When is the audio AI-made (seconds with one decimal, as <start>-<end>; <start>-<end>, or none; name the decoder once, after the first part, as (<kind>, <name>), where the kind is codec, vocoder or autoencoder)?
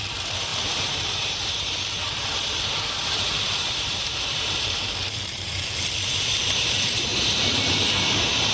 0.0-5.5 (vocoder, BigVGAN v2); 6.2-7.1; 8.1-8.5